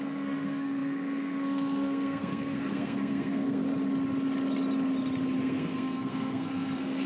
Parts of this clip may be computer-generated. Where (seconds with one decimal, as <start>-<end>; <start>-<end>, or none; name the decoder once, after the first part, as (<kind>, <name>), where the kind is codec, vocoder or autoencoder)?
0.0-3.6 (codec, SNAC); 5.4-7.1